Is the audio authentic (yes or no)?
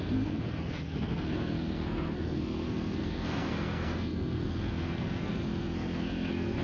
no